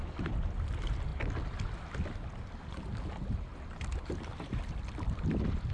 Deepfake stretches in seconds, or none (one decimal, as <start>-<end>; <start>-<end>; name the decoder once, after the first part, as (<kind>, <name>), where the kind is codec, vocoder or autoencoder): 3.5-4.6 (vocoder, BigVGAN v2)